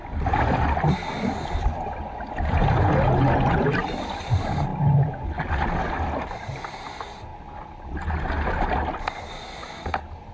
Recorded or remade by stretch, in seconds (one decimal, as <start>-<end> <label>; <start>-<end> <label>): 0.0-10.3 recorded